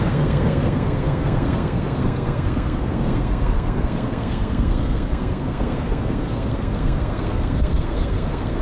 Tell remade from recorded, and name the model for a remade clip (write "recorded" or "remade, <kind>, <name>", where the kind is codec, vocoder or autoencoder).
remade, codec, SNAC